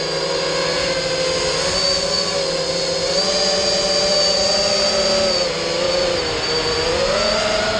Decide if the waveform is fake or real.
real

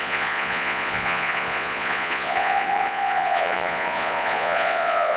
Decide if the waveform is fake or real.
fake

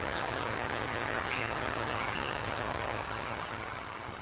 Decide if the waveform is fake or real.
fake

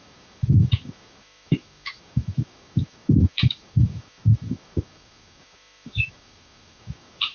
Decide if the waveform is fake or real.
fake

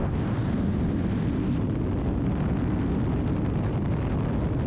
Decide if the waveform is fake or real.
real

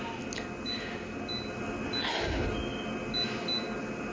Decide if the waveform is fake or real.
real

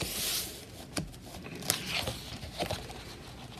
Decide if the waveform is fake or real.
real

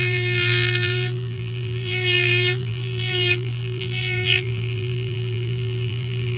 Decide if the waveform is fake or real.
fake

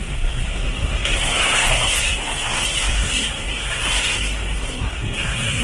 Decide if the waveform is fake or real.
fake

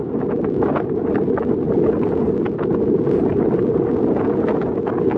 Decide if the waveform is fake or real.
real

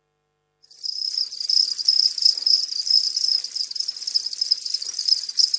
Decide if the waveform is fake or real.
real